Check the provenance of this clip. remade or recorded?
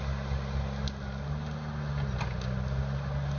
recorded